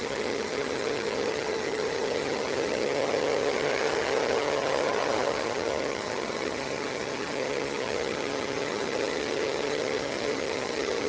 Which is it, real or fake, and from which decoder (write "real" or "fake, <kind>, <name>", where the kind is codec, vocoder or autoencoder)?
fake, vocoder, HiFi-GAN